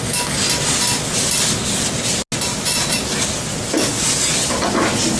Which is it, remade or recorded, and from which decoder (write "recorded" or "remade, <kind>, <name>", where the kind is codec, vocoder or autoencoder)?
recorded